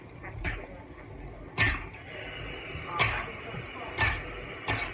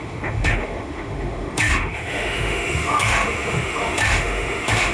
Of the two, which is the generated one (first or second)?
second